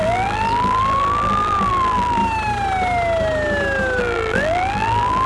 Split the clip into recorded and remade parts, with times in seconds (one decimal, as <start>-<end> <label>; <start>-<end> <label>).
0.0-2.2 remade; 2.2-4.0 recorded; 4.0-5.3 remade